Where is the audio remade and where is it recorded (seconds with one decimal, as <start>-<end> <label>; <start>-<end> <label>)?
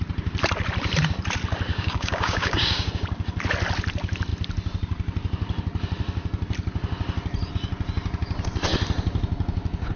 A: 0.0-1.7 recorded; 1.7-2.9 remade; 2.9-10.0 recorded